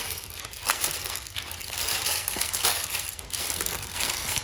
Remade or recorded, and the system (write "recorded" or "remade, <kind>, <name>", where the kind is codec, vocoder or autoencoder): remade, codec, SNAC